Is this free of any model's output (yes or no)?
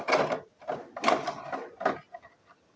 yes